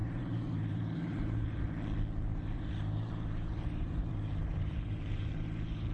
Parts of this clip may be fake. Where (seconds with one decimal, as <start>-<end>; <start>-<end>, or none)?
0.0-1.6; 2.3-5.9